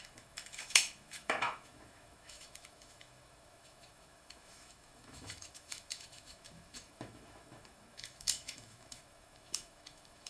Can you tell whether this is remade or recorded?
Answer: remade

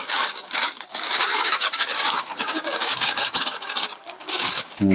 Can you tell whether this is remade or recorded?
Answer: remade